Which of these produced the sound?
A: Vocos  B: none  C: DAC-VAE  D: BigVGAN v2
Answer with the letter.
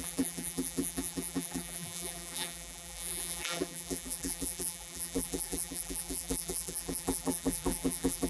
D